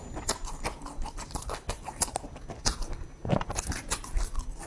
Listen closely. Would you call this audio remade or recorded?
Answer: recorded